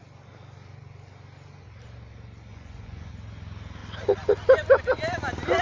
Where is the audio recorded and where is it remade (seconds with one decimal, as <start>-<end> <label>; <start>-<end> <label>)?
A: 0.0-2.5 recorded; 2.5-3.1 remade; 3.1-5.6 recorded